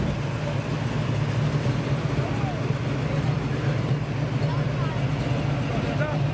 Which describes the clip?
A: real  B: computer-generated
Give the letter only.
A